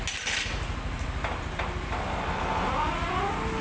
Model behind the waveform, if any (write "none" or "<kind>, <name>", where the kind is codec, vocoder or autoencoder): none